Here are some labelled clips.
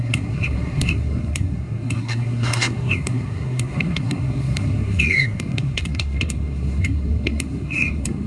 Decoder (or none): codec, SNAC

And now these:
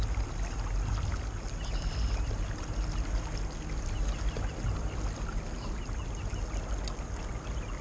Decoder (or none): none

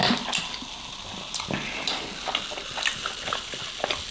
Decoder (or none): none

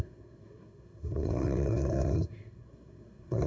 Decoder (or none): codec, SNAC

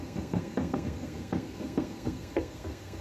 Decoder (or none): codec, SNAC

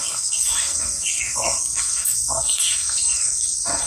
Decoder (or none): codec, SNAC